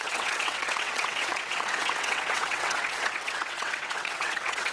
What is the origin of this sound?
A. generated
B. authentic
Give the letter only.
A